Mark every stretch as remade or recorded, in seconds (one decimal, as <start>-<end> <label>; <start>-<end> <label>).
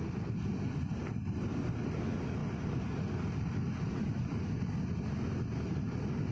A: 0.0-6.3 recorded